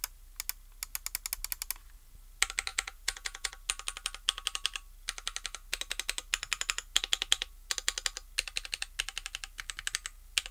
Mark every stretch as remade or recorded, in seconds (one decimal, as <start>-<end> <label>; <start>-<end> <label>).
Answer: 0.0-2.7 recorded; 2.7-3.5 remade; 3.5-10.5 recorded